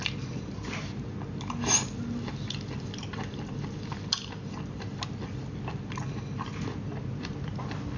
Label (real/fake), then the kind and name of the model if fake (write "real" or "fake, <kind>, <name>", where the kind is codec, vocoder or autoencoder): real